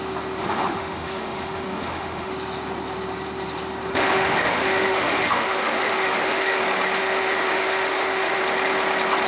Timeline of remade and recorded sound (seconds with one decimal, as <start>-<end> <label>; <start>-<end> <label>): 0.0-0.4 recorded; 0.4-2.3 remade; 2.3-3.9 recorded; 3.9-6.6 remade; 6.6-7.0 recorded; 7.0-8.4 remade; 8.4-9.3 recorded